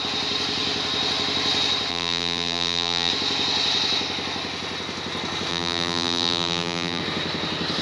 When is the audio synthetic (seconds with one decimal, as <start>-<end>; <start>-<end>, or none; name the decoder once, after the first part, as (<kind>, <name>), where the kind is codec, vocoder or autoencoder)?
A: 1.9-3.1 (vocoder, BigVGAN v2); 5.5-7.0